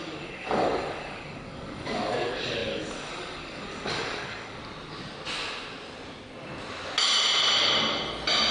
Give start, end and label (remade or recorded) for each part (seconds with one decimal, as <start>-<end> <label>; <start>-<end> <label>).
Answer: 0.0-4.6 remade; 4.6-8.5 recorded